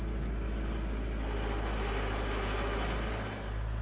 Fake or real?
real